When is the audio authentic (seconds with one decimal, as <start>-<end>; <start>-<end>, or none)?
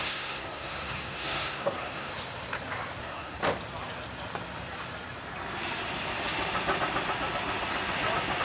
2.1-3.0; 3.4-8.4